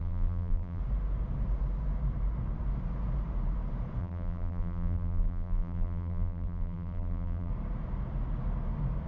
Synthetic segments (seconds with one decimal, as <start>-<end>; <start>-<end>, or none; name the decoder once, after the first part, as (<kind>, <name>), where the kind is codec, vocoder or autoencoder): 0.0-0.8 (vocoder, BigVGAN v2); 4.0-7.5